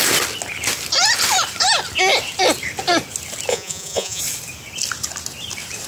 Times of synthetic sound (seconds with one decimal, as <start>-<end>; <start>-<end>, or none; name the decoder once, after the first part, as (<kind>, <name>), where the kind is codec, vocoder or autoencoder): 3.5-4.2 (vocoder, Vocos)